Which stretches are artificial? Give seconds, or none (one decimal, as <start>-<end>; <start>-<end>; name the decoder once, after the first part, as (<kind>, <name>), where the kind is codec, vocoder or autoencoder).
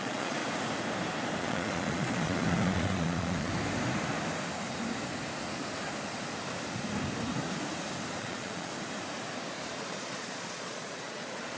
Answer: 0.0-0.4 (vocoder, Vocos); 1.4-3.5; 8.2-8.7; 9.7-11.6